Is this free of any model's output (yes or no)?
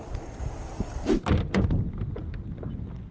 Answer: yes